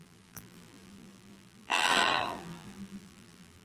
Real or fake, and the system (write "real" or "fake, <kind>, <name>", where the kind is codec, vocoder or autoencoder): fake, vocoder, BigVGAN v2